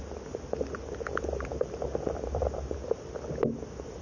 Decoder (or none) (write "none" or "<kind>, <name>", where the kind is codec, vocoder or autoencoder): none